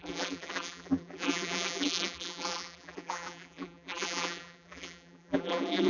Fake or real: fake